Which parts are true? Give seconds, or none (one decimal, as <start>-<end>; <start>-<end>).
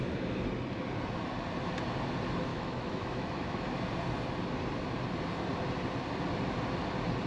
0.0-2.5; 3.7-7.3